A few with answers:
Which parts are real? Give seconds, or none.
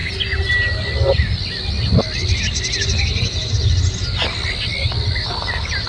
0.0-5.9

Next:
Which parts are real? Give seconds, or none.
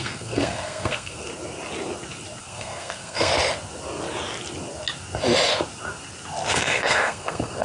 1.3-2.4; 3.3-6.5